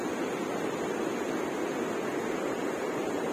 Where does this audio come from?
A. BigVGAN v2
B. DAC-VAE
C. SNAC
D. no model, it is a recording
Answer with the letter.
D